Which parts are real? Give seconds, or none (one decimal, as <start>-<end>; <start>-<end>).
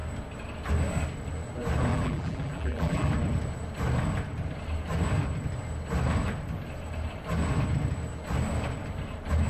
0.0-1.9; 3.1-9.5